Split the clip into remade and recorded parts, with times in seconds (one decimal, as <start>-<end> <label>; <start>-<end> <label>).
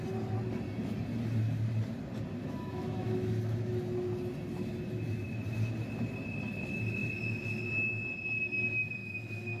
0.0-2.4 recorded; 2.4-3.7 remade; 3.7-9.0 recorded; 9.0-9.6 remade